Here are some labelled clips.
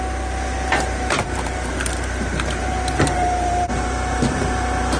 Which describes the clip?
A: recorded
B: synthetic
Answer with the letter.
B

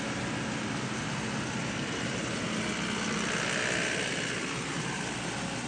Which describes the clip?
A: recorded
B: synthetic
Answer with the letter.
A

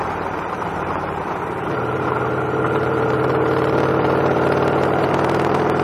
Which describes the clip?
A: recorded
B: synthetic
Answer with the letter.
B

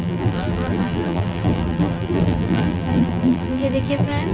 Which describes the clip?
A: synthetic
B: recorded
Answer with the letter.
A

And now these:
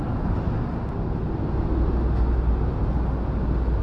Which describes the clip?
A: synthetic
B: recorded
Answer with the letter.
B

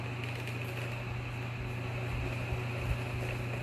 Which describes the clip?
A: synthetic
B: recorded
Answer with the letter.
B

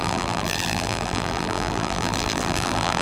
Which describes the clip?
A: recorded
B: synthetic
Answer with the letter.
B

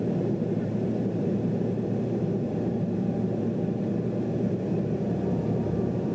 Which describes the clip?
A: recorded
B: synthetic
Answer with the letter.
B